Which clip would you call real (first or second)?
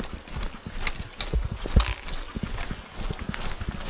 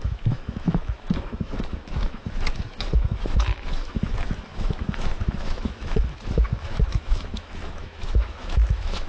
first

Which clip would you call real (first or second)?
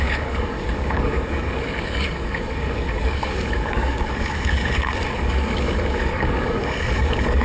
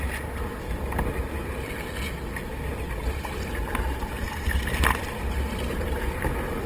second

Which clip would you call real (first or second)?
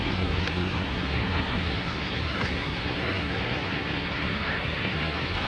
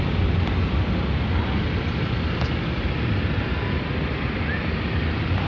second